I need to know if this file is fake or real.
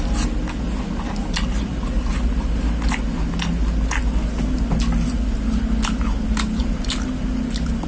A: real